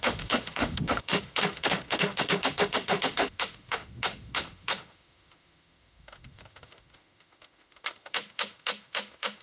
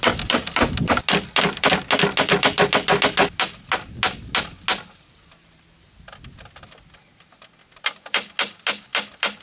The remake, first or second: first